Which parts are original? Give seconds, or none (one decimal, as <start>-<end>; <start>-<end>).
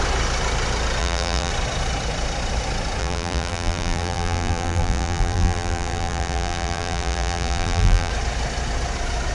0.0-1.0; 1.5-3.0; 8.1-9.3